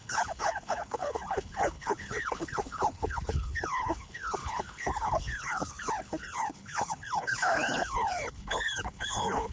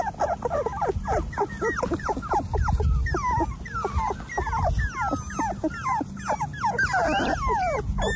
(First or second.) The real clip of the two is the second